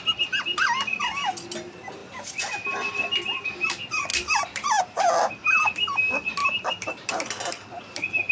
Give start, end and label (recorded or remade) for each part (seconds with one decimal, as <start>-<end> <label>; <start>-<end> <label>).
0.0-4.1 recorded; 4.1-4.8 remade; 4.8-6.4 recorded; 6.4-7.4 remade; 7.4-8.3 recorded